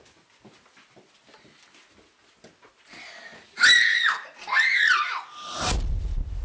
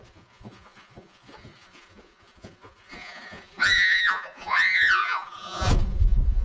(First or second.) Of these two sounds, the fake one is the second